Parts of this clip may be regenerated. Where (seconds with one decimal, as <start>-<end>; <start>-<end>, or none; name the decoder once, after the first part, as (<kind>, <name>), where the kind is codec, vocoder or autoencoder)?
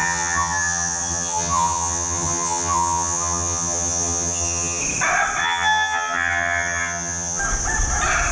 0.0-4.8 (vocoder, HiFi-GAN); 5.4-7.4